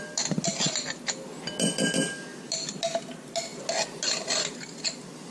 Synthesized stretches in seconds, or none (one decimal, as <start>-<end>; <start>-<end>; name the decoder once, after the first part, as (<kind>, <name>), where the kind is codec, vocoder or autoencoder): none